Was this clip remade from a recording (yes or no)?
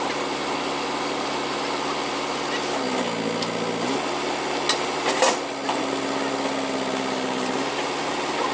no